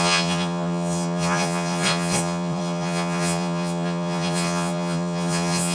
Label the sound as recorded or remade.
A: remade